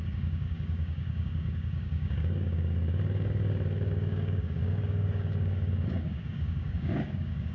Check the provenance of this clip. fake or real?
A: fake